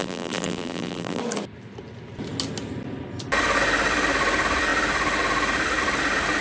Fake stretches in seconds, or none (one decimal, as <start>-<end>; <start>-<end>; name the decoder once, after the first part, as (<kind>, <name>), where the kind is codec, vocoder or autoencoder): 0.0-1.2 (vocoder, BigVGAN v2)

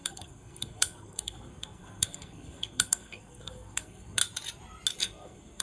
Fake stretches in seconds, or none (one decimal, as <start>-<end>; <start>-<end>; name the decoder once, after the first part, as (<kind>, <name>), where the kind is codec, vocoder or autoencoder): 0.0-4.2 (codec, SNAC); 5.0-5.6

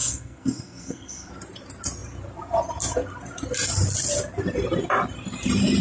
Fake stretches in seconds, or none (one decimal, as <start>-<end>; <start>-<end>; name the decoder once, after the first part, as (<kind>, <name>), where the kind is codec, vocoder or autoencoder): 0.0-1.3 (codec, SNAC)

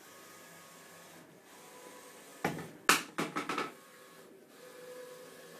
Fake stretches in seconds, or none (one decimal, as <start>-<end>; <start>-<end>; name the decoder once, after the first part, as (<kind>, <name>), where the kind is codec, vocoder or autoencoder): none

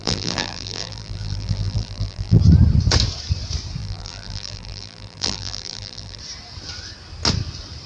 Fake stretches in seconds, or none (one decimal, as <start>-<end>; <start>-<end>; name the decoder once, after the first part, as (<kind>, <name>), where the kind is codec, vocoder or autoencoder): 0.0-2.4 (vocoder, BigVGAN v2); 3.8-6.2